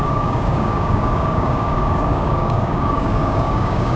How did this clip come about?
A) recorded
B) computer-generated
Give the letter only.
B